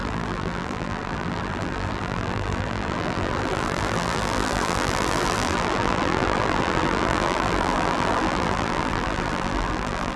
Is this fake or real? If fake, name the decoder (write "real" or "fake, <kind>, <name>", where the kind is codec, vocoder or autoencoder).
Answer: fake, vocoder, BigVGAN v2